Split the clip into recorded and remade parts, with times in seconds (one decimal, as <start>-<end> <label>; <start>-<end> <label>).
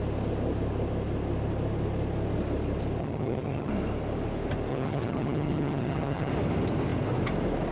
0.0-3.0 recorded; 3.0-3.7 remade; 3.7-4.7 recorded; 4.7-6.3 remade; 6.3-7.7 recorded